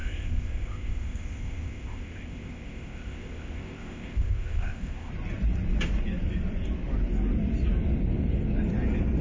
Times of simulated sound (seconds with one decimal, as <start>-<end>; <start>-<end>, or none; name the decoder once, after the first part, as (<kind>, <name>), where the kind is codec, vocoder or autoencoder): 0.0-5.1 (codec, ZipCodec)